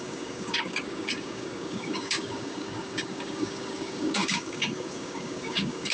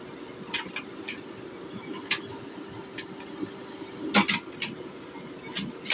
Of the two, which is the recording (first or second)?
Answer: second